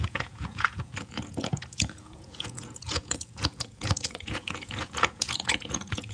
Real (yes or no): no